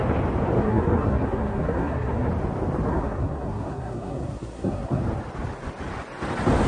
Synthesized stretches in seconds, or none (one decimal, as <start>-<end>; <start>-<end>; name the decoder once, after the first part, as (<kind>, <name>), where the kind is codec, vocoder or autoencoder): 0.6-2.3 (codec, SNAC); 2.9-5.0